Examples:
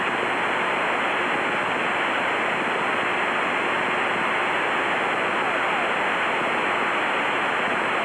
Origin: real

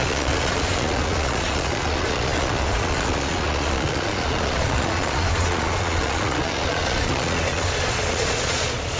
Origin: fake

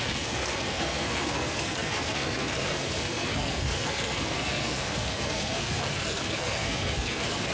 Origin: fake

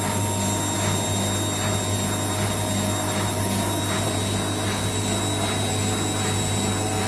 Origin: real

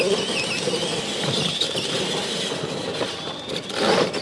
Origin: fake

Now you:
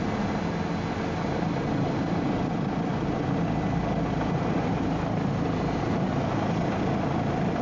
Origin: real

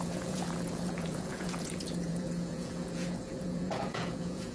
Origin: fake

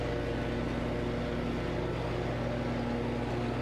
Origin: real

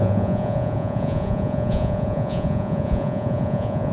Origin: fake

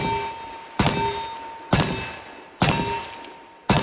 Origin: real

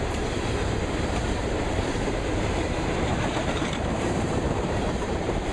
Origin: fake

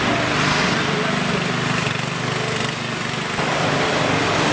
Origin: real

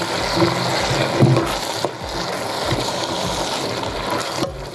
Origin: real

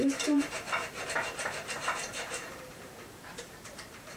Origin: fake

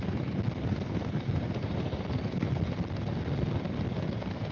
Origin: real